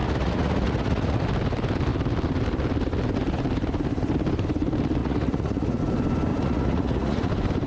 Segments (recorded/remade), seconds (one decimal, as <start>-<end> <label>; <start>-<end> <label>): 0.0-1.2 remade; 1.2-5.0 recorded; 5.0-5.8 remade; 5.8-6.3 recorded; 6.3-7.3 remade; 7.3-7.7 recorded